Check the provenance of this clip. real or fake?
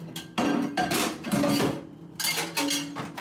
real